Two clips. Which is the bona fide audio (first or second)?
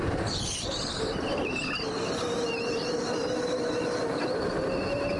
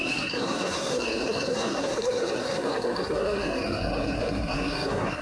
first